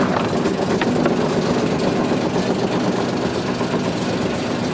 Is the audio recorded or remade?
recorded